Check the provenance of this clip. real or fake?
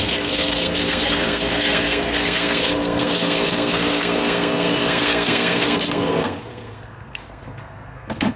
fake